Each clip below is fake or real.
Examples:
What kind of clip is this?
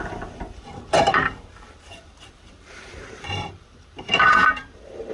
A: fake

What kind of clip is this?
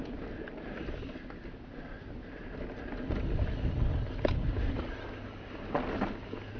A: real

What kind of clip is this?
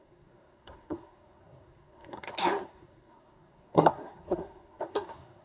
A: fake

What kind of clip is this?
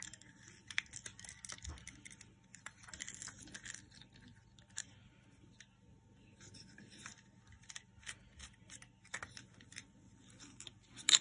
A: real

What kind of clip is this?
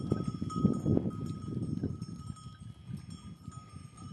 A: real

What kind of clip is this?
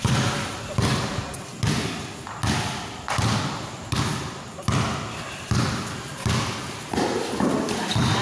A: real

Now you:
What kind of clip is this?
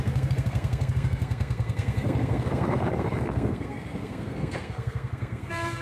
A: fake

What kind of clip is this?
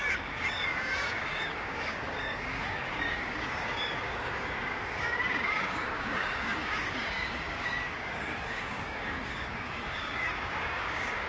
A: fake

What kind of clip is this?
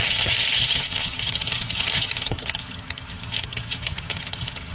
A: fake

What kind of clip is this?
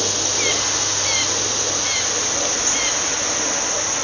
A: real